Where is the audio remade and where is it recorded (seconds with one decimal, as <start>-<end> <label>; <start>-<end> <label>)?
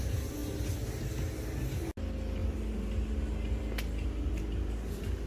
0.0-5.3 recorded